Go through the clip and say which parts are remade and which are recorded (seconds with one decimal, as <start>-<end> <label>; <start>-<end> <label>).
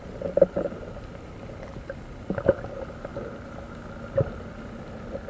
0.0-5.3 recorded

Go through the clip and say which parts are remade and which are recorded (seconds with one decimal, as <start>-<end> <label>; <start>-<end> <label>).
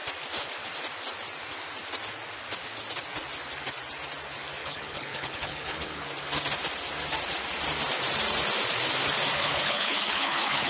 0.0-4.6 recorded; 4.6-6.0 remade; 6.0-9.4 recorded; 9.4-10.7 remade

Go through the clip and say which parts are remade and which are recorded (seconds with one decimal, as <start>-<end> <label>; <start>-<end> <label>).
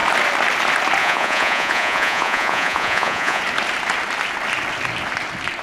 0.0-1.0 recorded; 1.0-3.4 remade; 3.4-5.6 recorded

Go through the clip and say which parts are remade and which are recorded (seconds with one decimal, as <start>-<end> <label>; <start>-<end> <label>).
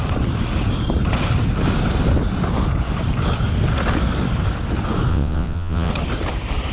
0.0-5.1 recorded; 5.1-5.9 remade; 5.9-6.7 recorded